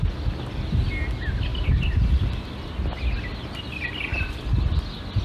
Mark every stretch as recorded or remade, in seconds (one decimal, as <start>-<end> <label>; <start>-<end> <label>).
0.0-1.5 recorded; 1.5-2.2 remade; 2.2-5.2 recorded